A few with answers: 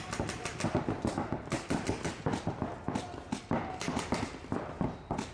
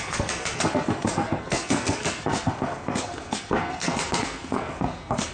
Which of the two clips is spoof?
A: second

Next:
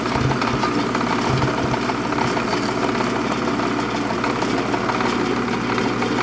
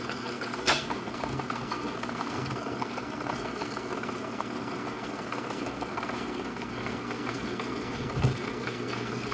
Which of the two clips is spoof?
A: second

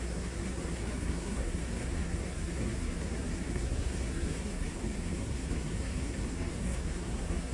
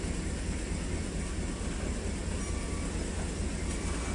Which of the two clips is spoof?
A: first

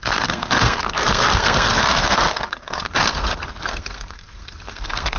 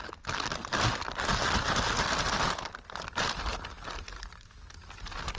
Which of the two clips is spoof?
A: first